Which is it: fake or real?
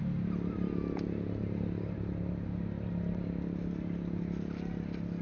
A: real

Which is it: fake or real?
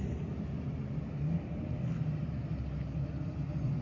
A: real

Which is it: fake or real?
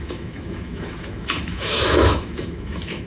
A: fake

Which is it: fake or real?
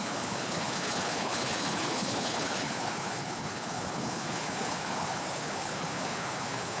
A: fake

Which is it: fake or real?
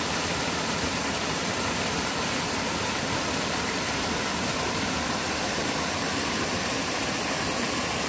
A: fake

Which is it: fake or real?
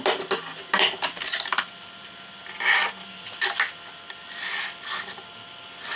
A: real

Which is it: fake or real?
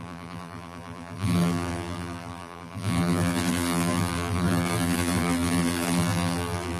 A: fake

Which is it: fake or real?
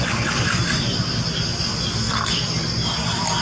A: real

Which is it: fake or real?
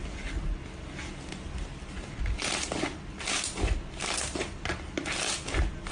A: real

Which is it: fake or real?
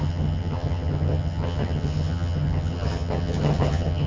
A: fake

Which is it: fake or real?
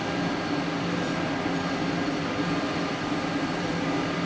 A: real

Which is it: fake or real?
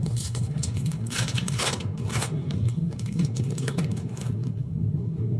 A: fake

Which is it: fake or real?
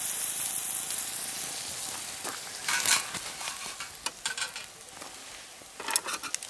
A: real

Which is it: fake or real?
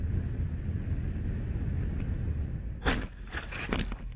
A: real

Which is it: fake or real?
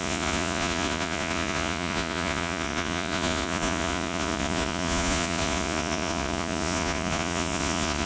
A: fake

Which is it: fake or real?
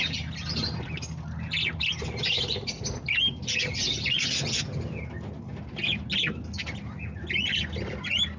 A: real